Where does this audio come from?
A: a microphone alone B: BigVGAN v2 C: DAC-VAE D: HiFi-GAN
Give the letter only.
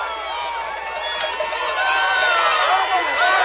A